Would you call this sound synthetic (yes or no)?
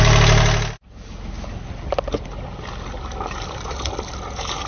no